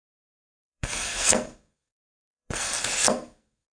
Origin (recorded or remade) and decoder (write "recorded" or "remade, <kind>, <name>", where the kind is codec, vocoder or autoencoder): remade, codec, SNAC